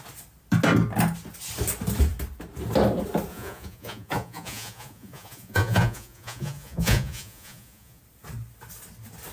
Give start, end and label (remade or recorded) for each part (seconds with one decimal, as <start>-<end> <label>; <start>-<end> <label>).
0.0-3.3 recorded; 3.3-8.0 remade; 8.0-9.3 recorded